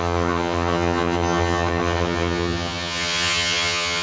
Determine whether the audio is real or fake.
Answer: fake